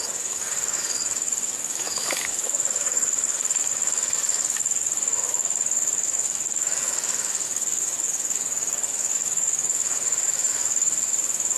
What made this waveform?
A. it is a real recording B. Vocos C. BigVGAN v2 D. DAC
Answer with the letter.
D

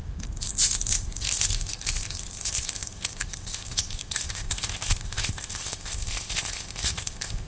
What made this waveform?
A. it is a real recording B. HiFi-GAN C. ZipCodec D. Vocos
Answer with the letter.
C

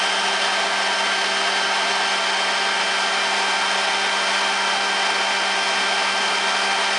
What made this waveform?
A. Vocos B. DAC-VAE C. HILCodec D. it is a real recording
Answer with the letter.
D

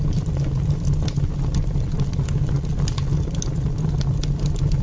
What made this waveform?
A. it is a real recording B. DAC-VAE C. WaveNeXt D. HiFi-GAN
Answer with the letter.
A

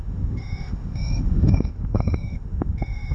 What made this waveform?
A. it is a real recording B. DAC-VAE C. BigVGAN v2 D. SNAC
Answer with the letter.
B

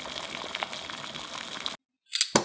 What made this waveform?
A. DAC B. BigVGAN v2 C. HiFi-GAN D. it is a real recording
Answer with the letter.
D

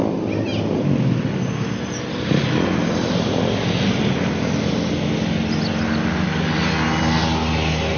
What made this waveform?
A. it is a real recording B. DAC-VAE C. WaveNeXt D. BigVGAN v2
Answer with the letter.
A